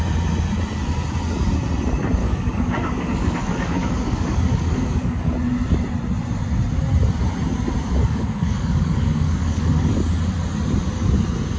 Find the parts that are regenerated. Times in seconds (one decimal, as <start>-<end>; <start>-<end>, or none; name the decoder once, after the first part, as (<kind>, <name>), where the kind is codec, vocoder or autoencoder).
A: 2.2-5.3 (codec, DAC); 8.0-9.9